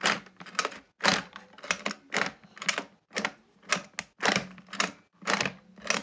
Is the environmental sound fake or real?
real